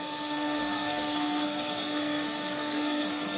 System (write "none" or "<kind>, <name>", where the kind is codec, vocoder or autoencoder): codec, SNAC